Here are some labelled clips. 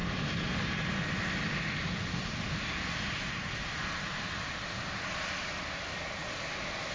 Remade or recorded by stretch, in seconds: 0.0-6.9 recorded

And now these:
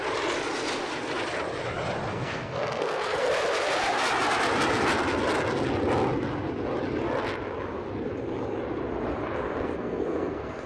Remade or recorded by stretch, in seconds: 0.0-2.1 recorded; 2.1-3.3 remade; 3.3-9.6 recorded; 9.6-10.7 remade

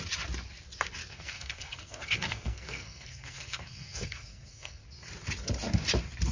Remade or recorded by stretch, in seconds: 0.0-1.0 recorded; 1.0-4.8 remade; 4.8-6.3 recorded

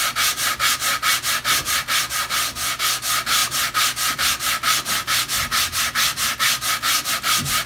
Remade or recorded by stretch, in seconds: 0.0-7.7 recorded

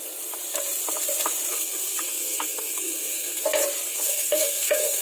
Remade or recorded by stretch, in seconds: 0.0-1.5 recorded; 1.5-3.4 remade; 3.4-3.9 recorded; 3.9-5.0 remade

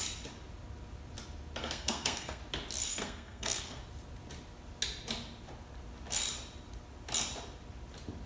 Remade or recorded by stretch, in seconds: 0.0-1.6 recorded; 1.6-2.4 remade; 2.4-2.9 recorded; 2.9-3.8 remade; 3.8-8.3 recorded